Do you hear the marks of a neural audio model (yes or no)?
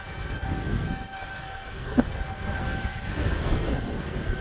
yes